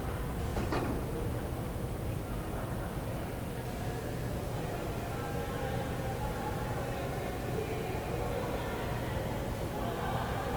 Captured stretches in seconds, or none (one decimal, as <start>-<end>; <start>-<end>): 0.0-10.6